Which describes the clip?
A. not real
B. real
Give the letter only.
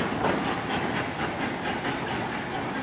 B